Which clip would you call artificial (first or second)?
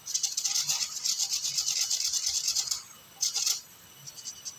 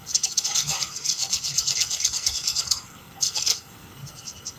second